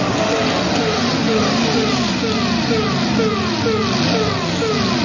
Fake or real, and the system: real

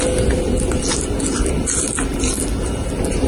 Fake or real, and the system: real